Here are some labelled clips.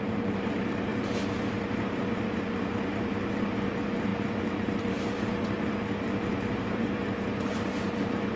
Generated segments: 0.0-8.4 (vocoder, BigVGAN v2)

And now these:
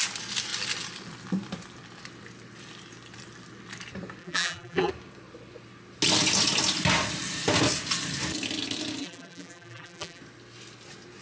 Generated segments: 4.2-4.9 (vocoder, BigVGAN v2); 9.0-10.2

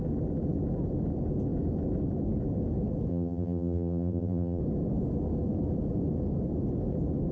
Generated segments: 3.1-4.6 (vocoder, BigVGAN v2)